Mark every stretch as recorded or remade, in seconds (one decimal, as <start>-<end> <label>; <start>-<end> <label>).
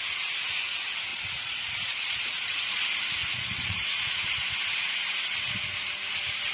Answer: 0.0-1.1 recorded; 1.1-2.8 remade; 2.8-3.2 recorded; 3.2-4.5 remade; 4.5-6.5 recorded